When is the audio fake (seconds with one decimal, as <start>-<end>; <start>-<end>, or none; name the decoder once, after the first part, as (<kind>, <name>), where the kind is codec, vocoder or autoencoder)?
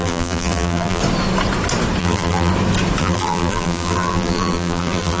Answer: 0.0-1.0 (vocoder, BigVGAN v2); 2.0-2.5; 3.0-5.2